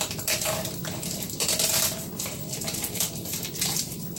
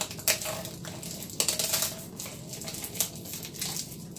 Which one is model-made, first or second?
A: first